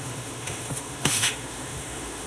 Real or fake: fake